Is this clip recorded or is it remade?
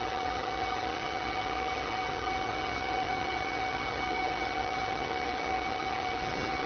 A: remade